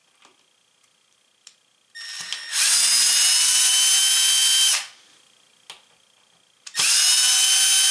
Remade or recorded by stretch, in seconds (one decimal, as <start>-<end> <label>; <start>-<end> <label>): 0.0-7.9 recorded